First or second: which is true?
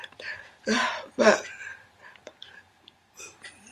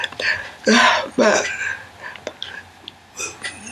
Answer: second